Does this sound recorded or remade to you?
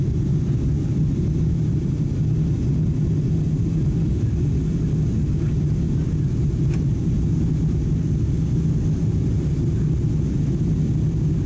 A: recorded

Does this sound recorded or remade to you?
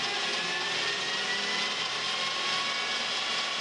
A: recorded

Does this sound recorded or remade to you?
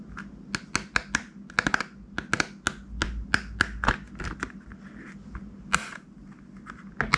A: recorded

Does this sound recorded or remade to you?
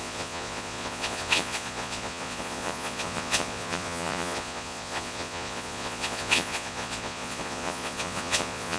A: remade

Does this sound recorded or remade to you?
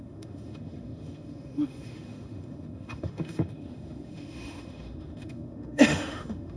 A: remade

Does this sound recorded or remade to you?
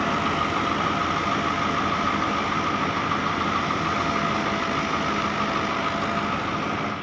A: recorded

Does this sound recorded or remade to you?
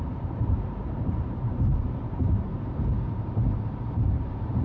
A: remade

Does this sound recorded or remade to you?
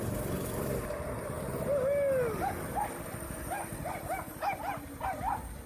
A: recorded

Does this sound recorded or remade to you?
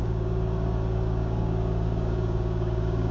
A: remade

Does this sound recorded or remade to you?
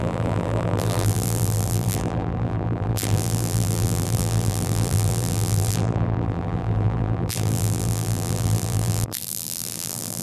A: remade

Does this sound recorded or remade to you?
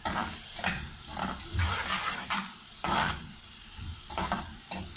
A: remade